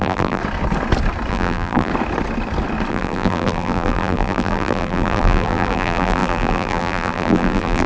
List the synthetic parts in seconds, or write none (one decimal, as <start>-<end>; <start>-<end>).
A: 0.0-0.4; 1.3-1.9; 2.9-7.9